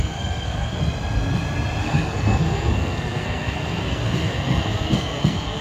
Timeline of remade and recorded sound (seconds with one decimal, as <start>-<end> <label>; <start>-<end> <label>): 0.0-0.8 remade; 0.8-1.8 recorded; 1.8-5.6 remade